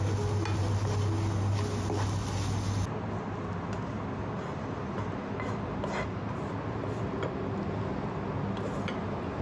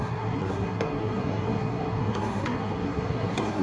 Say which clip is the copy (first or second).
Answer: second